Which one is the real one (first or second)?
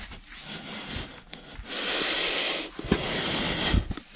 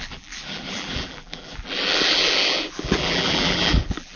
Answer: first